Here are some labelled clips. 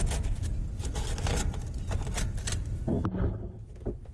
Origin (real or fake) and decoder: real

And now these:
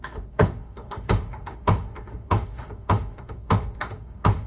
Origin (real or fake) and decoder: fake, autoencoder, DAC-VAE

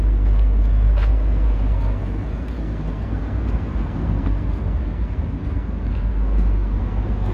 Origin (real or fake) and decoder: fake, codec, SNAC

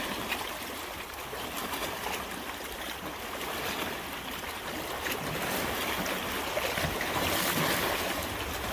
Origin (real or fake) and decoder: real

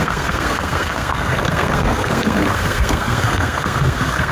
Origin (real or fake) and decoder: fake, codec, SNAC